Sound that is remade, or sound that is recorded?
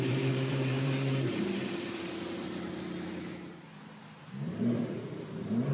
remade